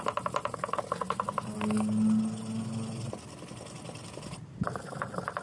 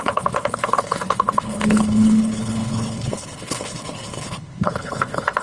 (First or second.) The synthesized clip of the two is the second